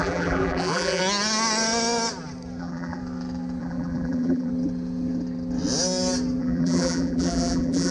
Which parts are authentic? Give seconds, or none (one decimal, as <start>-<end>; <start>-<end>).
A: 1.0-2.6; 3.0-3.6; 4.5-6.4